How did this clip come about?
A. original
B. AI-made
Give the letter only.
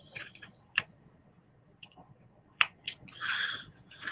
B